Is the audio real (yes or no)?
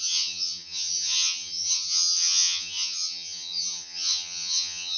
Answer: no